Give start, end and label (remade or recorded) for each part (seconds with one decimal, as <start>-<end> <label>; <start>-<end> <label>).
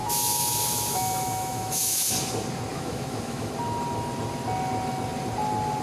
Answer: 0.0-2.1 remade; 2.1-2.7 recorded; 2.7-3.5 remade; 3.5-5.8 recorded